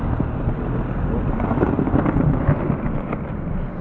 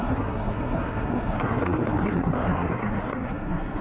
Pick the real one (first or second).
first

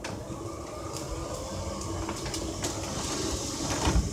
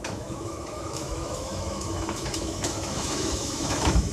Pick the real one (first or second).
first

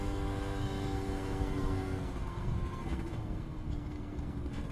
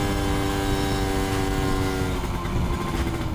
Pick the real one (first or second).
second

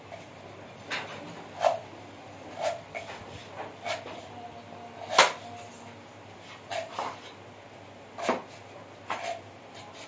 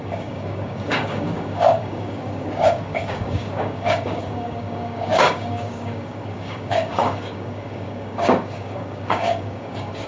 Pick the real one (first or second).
first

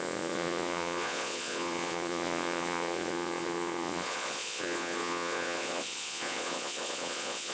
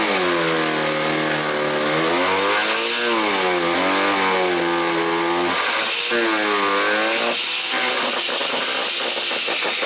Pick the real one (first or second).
second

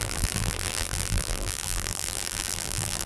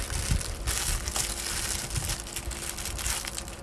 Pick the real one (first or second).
second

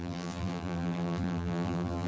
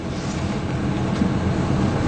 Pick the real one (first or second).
second